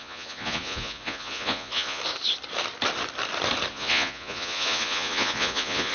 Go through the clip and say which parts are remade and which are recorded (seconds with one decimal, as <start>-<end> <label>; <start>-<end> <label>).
0.0-2.0 remade; 2.0-3.7 recorded; 3.7-5.9 remade

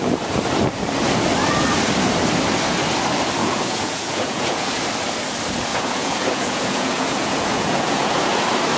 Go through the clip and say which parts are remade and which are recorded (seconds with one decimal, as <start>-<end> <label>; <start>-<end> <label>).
0.0-3.4 recorded; 3.4-4.8 remade; 4.8-5.7 recorded; 5.7-8.3 remade; 8.3-8.8 recorded

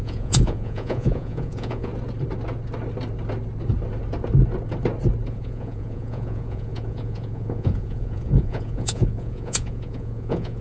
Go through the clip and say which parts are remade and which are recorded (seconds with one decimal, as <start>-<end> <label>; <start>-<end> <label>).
0.0-1.9 remade; 1.9-5.3 recorded; 5.3-10.6 remade

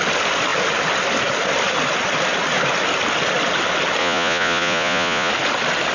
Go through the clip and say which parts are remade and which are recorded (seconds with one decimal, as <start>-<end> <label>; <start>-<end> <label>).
0.0-4.0 recorded; 4.0-5.3 remade; 5.3-5.9 recorded

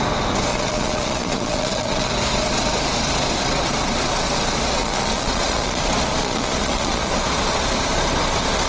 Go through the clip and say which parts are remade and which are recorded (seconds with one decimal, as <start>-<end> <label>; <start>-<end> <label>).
0.0-0.5 recorded; 0.5-2.1 remade; 2.1-4.8 recorded; 4.8-5.8 remade; 5.8-6.2 recorded; 6.2-7.1 remade; 7.1-8.7 recorded

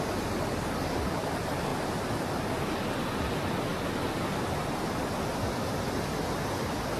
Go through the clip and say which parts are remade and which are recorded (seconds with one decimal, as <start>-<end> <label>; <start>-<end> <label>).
0.0-7.0 recorded

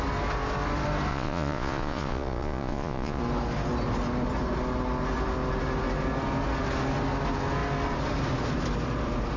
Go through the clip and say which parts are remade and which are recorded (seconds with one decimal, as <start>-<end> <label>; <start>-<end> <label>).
0.0-1.1 recorded; 1.1-3.2 remade; 3.2-9.4 recorded